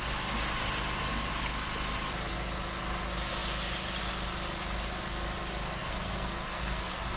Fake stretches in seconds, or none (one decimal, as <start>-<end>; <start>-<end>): 5.8-7.2